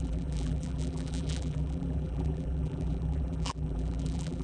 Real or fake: fake